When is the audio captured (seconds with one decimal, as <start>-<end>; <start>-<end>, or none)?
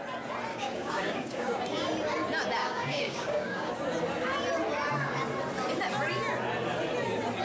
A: 0.0-0.5; 1.6-2.6; 3.7-7.4